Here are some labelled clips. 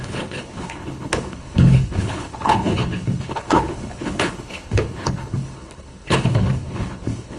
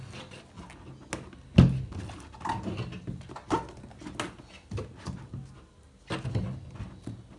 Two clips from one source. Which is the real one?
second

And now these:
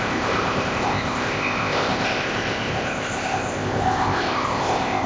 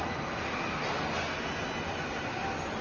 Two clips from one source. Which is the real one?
second